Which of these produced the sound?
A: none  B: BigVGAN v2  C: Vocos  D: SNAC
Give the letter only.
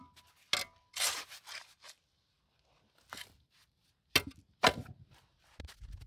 A